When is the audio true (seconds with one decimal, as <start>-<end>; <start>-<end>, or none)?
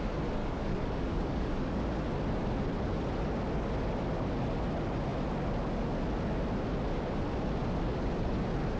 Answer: 0.0-0.4; 1.8-8.8